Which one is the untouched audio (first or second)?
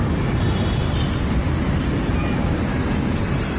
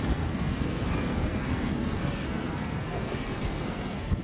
first